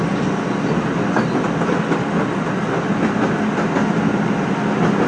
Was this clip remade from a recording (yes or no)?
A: no